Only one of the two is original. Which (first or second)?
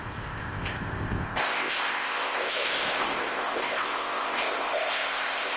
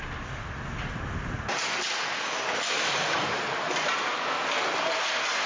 second